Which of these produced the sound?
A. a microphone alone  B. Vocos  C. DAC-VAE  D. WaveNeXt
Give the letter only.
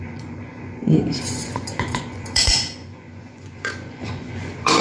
B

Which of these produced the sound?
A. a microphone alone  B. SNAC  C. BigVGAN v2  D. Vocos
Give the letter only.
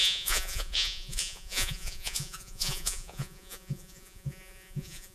D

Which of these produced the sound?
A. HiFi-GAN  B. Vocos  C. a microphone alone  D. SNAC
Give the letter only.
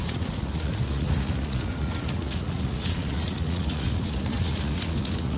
B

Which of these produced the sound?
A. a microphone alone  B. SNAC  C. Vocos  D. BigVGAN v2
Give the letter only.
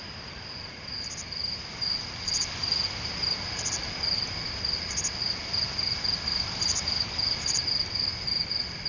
A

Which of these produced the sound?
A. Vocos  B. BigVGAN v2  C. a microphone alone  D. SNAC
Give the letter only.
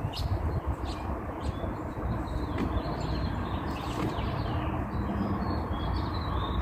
C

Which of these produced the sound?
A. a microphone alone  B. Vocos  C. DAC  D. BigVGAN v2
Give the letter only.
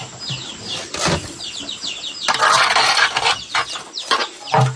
A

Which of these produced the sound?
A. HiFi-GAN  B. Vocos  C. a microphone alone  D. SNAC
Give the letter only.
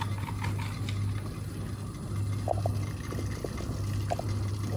C